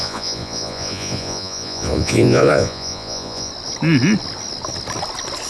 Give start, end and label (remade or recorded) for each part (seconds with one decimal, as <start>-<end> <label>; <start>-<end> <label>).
0.0-3.5 remade; 3.5-5.5 recorded